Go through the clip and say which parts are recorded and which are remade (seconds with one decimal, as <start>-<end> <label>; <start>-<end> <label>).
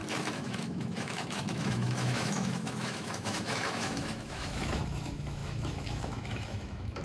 0.0-7.0 remade